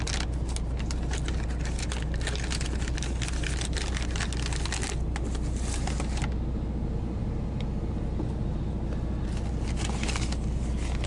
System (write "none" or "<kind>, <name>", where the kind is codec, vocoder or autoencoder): none